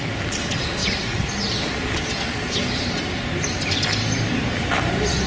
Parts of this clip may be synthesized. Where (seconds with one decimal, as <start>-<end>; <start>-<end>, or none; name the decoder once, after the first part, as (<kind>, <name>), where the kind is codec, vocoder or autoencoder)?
0.8-1.3 (vocoder, Vocos)

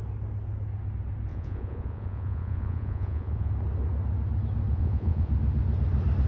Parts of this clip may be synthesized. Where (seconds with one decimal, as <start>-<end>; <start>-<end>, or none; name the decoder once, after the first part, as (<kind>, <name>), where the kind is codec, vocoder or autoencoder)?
1.3-3.5 (vocoder, Vocos); 4.7-5.3

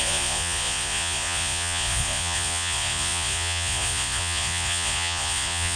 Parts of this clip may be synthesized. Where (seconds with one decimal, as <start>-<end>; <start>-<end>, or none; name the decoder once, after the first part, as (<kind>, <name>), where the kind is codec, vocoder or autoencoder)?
0.0-5.8 (vocoder, Vocos)

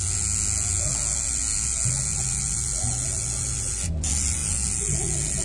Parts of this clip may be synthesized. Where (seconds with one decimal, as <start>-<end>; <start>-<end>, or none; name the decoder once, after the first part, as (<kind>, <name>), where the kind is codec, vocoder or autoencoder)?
none

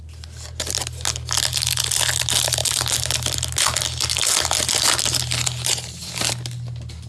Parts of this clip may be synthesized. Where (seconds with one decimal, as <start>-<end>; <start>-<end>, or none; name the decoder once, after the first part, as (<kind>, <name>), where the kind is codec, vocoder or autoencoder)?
none